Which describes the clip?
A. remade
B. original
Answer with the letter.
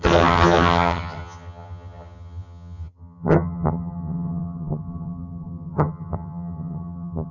A